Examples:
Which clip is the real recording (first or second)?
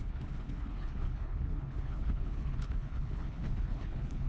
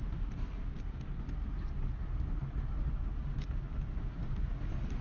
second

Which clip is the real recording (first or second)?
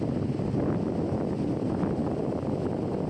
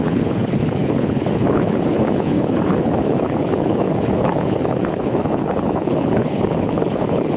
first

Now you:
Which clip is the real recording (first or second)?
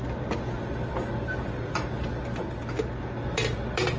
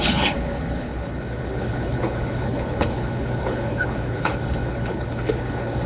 first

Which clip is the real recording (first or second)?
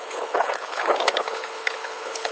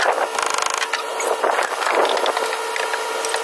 second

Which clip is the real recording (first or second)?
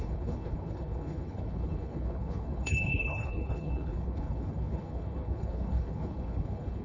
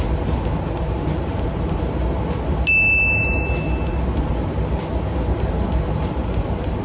second